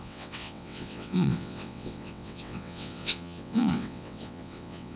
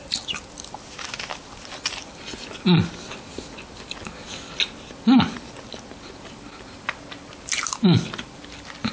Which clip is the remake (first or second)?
first